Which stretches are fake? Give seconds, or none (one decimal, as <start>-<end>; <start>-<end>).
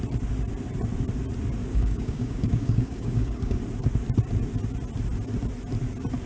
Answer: 1.6-3.6